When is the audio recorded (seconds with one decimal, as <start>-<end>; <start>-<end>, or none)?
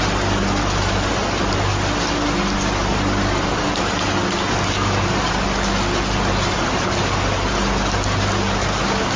0.0-9.2